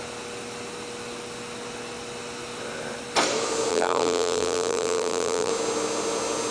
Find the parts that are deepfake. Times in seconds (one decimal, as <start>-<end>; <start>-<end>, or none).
3.7-5.5